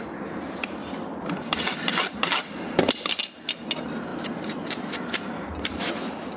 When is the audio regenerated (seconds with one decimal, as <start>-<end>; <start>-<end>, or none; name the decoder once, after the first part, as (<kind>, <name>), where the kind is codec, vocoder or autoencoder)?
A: 0.8-2.4 (vocoder, BigVGAN v2); 4.1-5.9